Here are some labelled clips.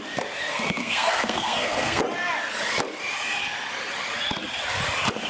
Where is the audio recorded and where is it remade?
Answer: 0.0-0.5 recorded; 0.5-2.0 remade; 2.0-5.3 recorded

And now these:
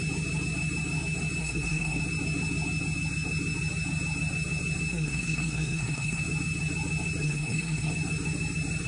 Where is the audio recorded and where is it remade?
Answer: 0.0-1.4 recorded; 1.4-2.0 remade; 2.0-4.9 recorded; 4.9-6.2 remade; 6.2-7.2 recorded; 7.2-7.9 remade; 7.9-8.9 recorded

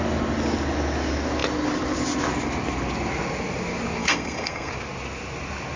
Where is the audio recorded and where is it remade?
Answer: 0.0-4.0 recorded; 4.0-4.7 remade; 4.7-5.8 recorded